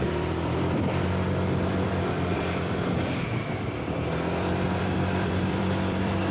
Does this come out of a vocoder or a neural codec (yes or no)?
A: yes